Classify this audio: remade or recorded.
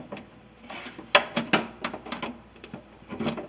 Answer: recorded